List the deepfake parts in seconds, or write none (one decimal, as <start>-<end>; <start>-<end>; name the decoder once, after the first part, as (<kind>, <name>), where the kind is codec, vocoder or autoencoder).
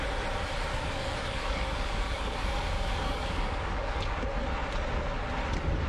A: 0.7-4.2 (codec, DAC)